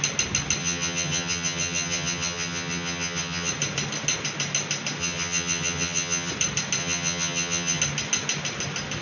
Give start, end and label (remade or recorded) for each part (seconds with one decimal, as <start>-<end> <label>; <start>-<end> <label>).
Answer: 0.0-0.6 recorded; 0.6-3.5 remade; 3.5-5.0 recorded; 5.0-6.3 remade; 6.3-6.8 recorded; 6.8-7.8 remade; 7.8-9.0 recorded